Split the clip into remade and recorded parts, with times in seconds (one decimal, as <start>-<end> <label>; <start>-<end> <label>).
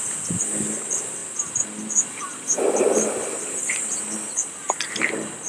0.0-5.5 recorded